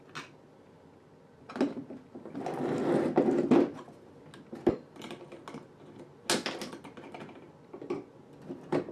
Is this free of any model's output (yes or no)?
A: yes